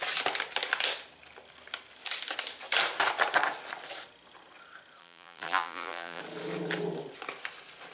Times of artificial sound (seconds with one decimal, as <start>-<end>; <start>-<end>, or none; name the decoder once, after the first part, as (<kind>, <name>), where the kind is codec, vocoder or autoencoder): 5.0-6.2 (vocoder, BigVGAN v2)